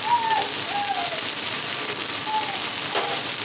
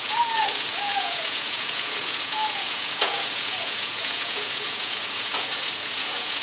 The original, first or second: first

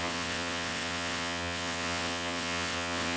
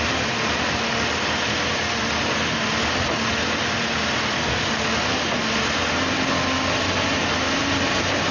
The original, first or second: second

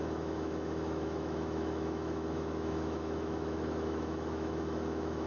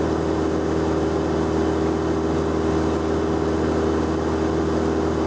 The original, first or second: second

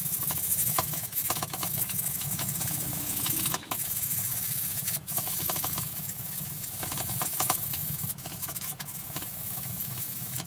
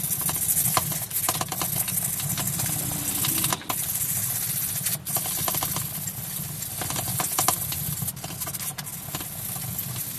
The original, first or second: second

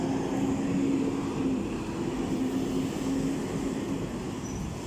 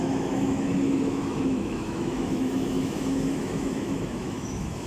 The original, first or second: first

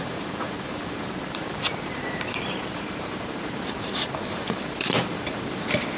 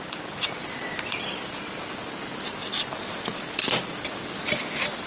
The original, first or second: second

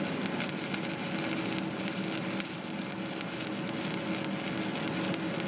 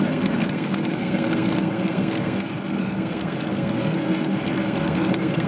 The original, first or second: first